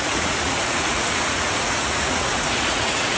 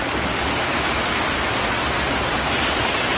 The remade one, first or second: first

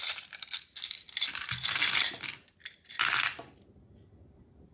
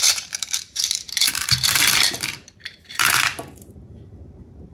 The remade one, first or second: second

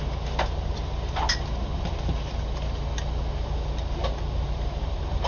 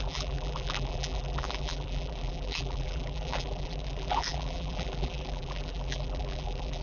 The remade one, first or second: second